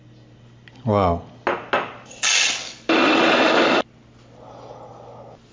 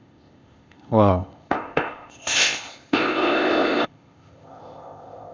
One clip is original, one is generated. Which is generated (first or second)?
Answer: second